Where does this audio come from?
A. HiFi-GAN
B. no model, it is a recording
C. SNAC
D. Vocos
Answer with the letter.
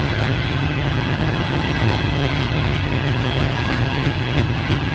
A